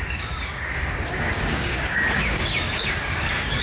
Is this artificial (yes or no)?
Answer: yes